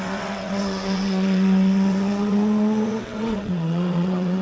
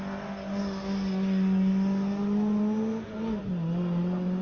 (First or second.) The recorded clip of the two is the second